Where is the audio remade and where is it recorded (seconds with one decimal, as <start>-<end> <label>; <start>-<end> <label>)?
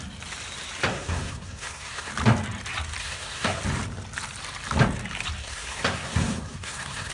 0.0-0.9 recorded; 0.9-2.1 remade; 2.1-3.0 recorded; 3.0-3.6 remade; 3.6-5.4 recorded; 5.4-7.1 remade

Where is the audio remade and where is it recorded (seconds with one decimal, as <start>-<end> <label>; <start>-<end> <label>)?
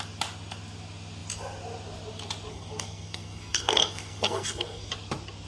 0.0-2.5 recorded; 2.5-4.9 remade; 4.9-5.5 recorded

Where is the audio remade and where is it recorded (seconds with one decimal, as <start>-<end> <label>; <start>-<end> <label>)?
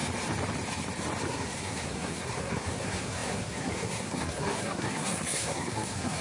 0.0-1.2 recorded; 1.2-6.2 remade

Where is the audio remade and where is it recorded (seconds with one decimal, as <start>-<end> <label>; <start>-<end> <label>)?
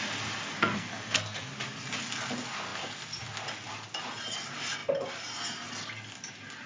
0.0-0.5 recorded; 0.5-1.5 remade; 1.5-6.7 recorded